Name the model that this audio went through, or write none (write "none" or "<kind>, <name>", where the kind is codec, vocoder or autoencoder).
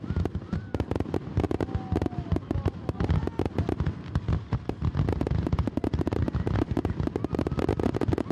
none